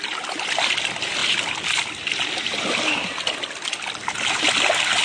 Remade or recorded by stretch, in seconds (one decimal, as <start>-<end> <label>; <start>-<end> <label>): 0.0-5.0 recorded

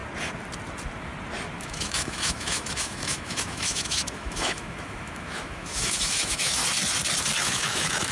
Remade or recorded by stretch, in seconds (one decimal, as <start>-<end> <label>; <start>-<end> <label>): 0.0-1.6 recorded; 1.6-6.6 remade; 6.6-7.4 recorded; 7.4-8.1 remade